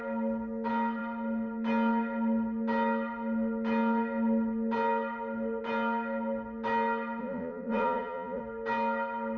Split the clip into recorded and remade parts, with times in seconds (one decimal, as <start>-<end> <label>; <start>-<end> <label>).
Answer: 0.0-7.2 recorded; 7.2-8.4 remade; 8.4-9.4 recorded